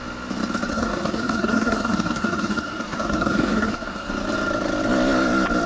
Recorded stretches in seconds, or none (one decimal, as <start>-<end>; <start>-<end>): 0.0-0.7; 4.1-5.7